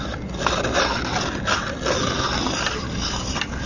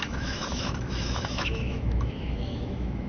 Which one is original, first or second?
first